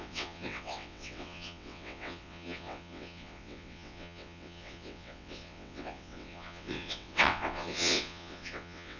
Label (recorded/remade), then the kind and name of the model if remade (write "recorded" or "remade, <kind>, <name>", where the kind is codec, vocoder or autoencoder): remade, vocoder, WaveNeXt